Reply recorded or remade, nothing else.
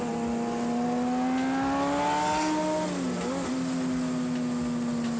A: recorded